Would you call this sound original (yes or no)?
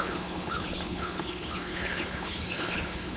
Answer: no